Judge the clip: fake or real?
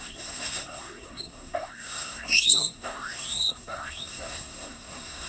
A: fake